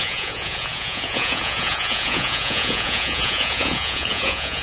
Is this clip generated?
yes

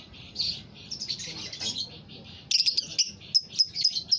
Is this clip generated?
no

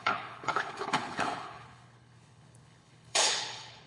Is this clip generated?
yes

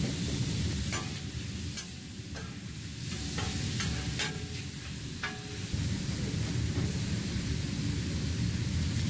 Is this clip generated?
no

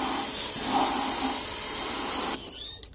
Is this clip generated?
no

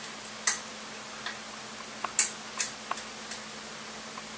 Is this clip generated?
no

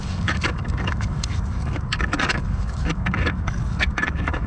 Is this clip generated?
yes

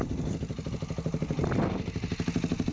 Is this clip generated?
no